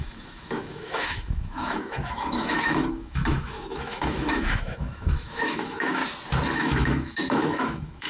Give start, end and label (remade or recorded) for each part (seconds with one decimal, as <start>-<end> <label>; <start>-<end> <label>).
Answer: 0.0-6.0 remade; 6.0-6.5 recorded; 6.5-8.1 remade